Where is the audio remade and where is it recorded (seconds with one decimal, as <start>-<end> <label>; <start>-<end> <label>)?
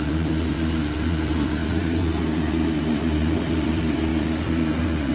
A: 0.0-5.1 remade